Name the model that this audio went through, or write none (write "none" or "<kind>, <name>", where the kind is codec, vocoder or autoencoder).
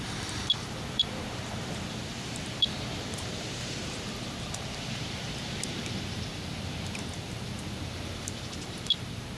vocoder, BigVGAN v2